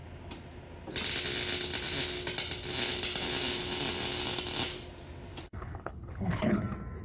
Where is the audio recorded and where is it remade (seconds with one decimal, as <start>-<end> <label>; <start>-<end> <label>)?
0.0-5.3 recorded; 5.3-6.6 remade; 6.6-7.0 recorded